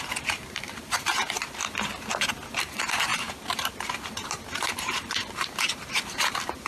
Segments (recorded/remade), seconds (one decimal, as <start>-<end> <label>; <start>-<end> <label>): 0.0-1.6 remade; 1.6-2.6 recorded; 2.6-6.7 remade